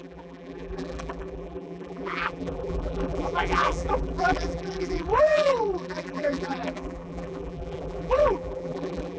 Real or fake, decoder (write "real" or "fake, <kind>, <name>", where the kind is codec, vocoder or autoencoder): fake, vocoder, BigVGAN v2